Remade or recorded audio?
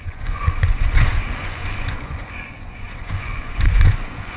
remade